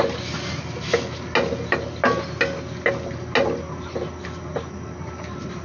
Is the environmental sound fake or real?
real